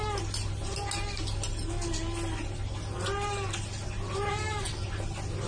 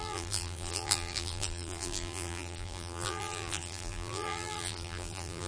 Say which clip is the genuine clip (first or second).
first